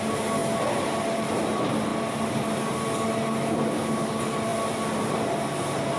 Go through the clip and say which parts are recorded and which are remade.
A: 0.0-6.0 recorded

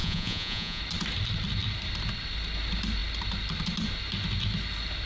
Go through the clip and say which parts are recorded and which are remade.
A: 0.0-0.8 remade; 0.8-5.1 recorded

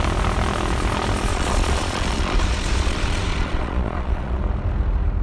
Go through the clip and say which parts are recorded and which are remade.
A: 0.0-1.3 recorded; 1.3-4.4 remade; 4.4-5.2 recorded

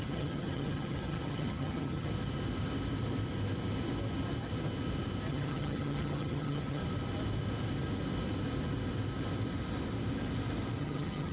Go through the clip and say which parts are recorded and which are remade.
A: 0.0-2.1 remade; 2.1-5.3 recorded; 5.3-6.8 remade; 6.8-10.8 recorded; 10.8-11.3 remade

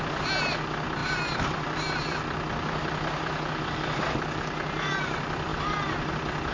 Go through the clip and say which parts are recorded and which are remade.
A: 0.0-6.5 recorded